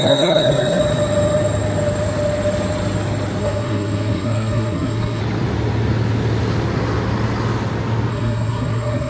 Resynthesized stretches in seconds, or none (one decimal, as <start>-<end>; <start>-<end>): 0.0-0.8; 3.4-5.2; 8.1-9.1